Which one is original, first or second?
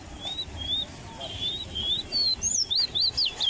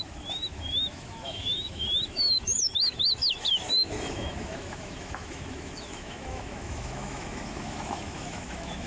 first